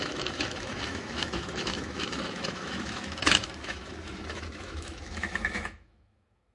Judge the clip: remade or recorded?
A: remade